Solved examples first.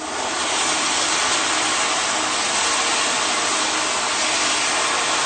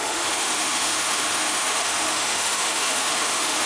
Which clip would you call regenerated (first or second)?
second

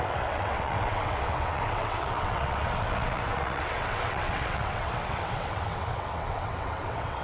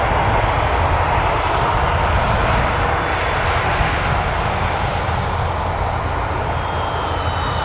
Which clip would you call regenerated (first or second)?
first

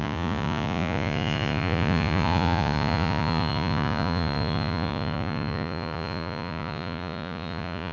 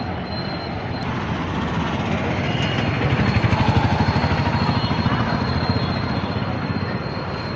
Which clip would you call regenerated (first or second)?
first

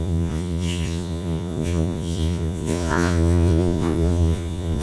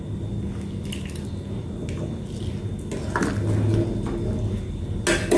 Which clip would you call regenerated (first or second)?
first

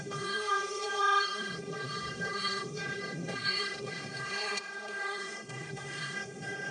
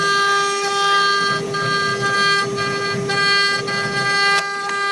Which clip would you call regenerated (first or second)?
first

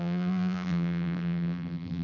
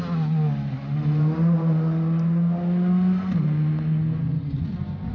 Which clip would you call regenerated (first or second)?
first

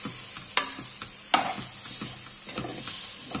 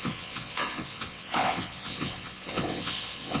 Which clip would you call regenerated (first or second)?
second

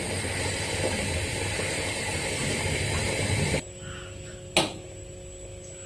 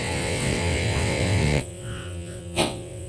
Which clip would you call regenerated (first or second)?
second